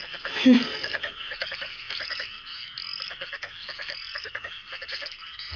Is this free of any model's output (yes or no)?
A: no